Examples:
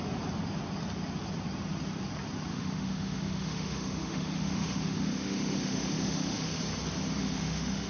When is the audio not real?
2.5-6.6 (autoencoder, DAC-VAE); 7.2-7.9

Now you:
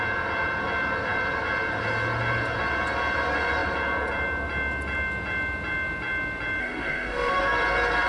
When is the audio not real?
6.6-7.4 (autoencoder, DAC-VAE)